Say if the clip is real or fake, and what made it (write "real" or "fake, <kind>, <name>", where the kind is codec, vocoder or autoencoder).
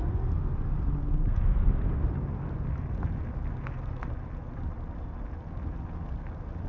real